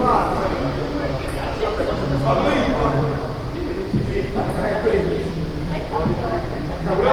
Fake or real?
fake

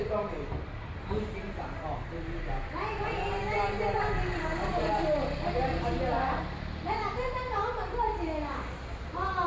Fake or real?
real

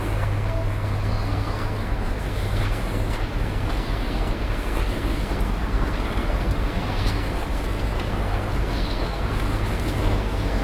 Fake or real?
fake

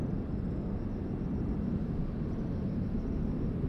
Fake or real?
real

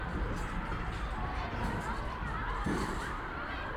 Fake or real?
fake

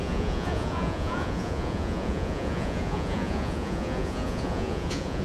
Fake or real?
fake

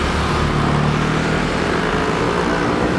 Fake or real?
real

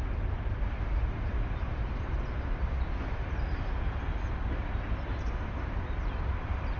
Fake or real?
real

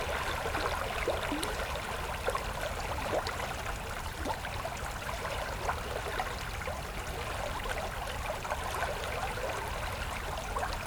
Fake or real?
real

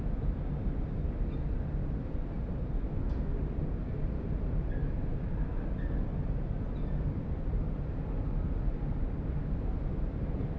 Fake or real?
real